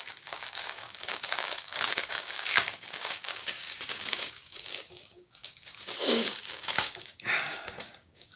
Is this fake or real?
fake